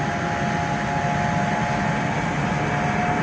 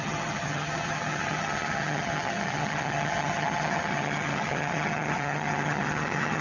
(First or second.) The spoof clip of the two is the second